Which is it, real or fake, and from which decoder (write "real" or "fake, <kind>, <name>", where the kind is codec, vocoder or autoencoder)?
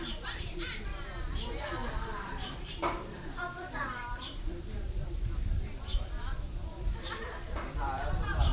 fake, vocoder, BigVGAN v2